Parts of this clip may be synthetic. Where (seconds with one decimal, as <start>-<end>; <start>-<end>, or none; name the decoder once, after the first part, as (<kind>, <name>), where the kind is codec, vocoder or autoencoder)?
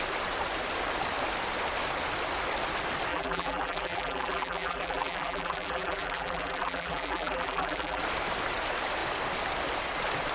3.1-8.0 (vocoder, BigVGAN v2)